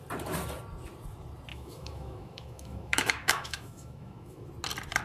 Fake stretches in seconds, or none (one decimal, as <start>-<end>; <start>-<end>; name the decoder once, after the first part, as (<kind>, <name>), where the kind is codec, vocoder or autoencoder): 1.5-4.5 (autoencoder, DAC-VAE)